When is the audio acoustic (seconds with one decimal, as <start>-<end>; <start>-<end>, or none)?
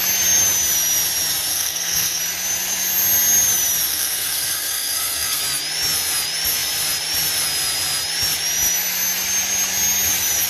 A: 0.0-1.5; 2.2-3.9; 5.4-10.5